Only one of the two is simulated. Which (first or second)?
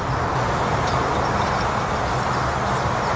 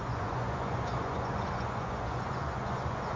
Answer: second